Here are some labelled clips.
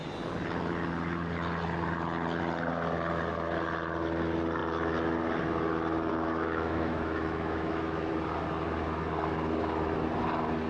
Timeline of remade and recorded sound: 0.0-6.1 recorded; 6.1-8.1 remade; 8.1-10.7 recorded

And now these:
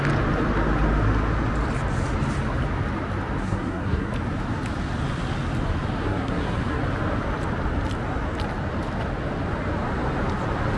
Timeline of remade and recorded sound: 0.0-3.4 recorded; 3.4-4.1 remade; 4.1-6.0 recorded; 6.0-6.8 remade; 6.8-10.8 recorded